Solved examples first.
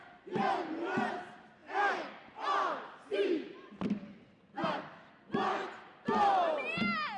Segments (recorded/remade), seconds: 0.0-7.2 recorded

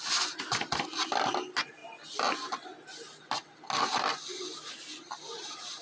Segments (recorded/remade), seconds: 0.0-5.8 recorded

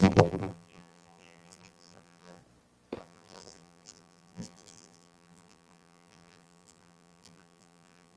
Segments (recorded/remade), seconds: 0.0-2.4 remade; 2.4-3.0 recorded; 3.0-8.2 remade

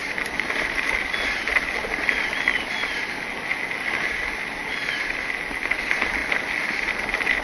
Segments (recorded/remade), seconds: 0.0-7.4 recorded

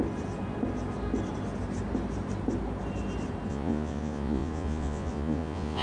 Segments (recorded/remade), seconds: 0.0-3.5 recorded; 3.5-5.8 remade

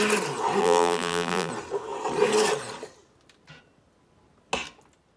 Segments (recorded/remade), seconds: 0.0-0.6 recorded; 0.6-1.5 remade; 1.5-5.2 recorded

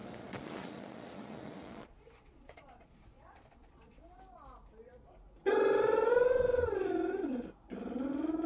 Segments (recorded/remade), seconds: 0.0-4.0 remade; 4.0-8.5 recorded